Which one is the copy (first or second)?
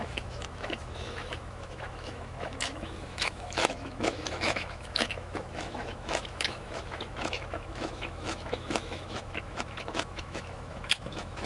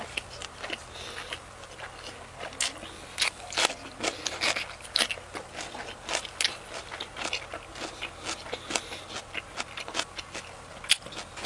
first